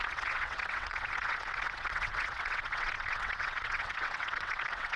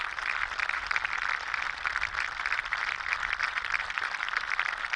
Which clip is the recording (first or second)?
second